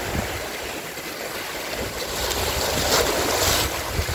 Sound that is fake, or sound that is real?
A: real